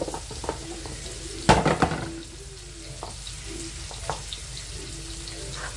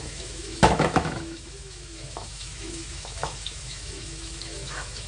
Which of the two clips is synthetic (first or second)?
second